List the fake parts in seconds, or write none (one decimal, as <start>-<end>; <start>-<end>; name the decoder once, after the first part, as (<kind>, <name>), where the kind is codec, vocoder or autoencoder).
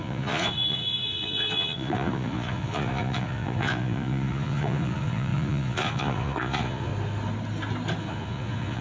0.0-6.9 (vocoder, Vocos); 8.0-8.8